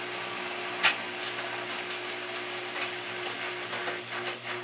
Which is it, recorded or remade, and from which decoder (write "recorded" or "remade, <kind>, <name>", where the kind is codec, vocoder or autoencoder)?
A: recorded